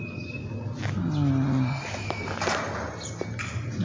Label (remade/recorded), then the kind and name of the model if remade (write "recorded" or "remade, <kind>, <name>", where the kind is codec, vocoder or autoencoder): recorded